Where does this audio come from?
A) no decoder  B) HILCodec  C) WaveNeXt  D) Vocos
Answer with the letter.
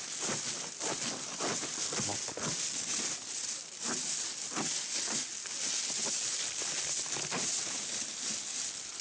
A